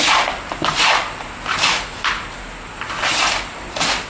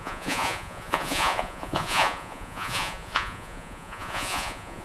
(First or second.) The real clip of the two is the first